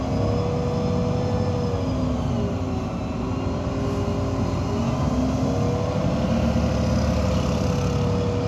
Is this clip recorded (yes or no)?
yes